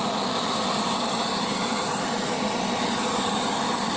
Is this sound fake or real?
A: real